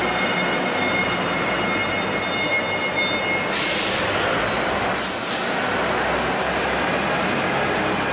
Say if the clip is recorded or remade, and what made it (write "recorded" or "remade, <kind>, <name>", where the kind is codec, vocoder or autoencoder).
recorded